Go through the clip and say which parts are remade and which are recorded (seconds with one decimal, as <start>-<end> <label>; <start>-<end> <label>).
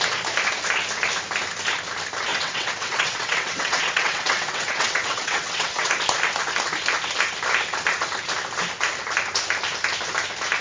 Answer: 0.0-2.3 recorded; 2.3-5.9 remade; 5.9-10.6 recorded